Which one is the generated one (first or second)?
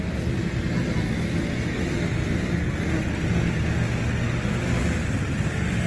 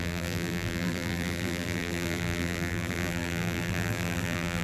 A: second